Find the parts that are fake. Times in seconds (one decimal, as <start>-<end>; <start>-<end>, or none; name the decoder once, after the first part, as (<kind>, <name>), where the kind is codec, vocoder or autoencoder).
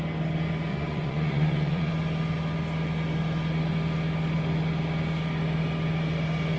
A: 0.7-1.9 (vocoder, Vocos)